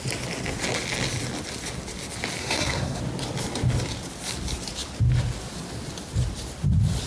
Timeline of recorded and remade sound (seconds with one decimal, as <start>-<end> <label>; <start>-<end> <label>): 0.0-2.4 recorded; 2.4-3.0 remade; 3.0-7.1 recorded